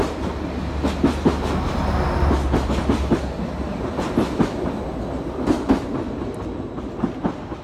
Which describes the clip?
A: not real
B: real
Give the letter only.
B